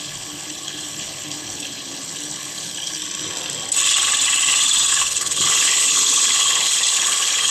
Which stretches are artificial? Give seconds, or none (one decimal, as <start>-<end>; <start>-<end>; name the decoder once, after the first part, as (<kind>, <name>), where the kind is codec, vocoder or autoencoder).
0.0-3.0 (codec, HILCodec); 4.9-7.5